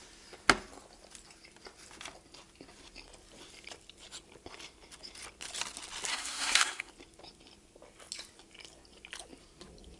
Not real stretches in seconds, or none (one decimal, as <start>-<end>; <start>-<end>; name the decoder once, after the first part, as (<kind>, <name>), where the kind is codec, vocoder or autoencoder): 6.1-6.9 (codec, SNAC)